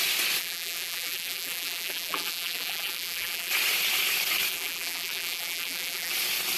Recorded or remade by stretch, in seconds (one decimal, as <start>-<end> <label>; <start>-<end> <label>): 0.0-0.4 recorded; 0.4-3.5 remade; 3.5-4.5 recorded; 4.5-6.1 remade; 6.1-6.6 recorded